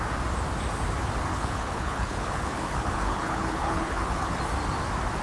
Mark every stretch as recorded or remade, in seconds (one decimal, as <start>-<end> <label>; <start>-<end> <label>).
0.0-1.3 recorded; 1.3-4.4 remade; 4.4-5.2 recorded